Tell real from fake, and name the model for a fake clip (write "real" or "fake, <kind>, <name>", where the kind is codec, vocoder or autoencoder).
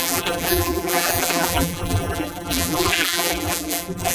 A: fake, vocoder, BigVGAN v2